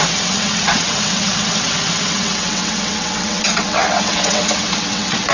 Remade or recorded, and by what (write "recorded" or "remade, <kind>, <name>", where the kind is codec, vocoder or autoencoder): remade, vocoder, WaveNeXt